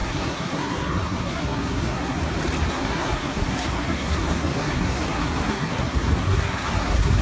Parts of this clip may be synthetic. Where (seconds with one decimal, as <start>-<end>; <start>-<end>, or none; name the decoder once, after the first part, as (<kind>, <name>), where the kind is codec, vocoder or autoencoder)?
0.0-2.2 (codec, SNAC); 2.7-7.2